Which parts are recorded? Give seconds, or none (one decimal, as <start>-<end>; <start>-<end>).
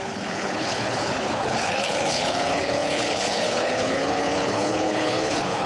none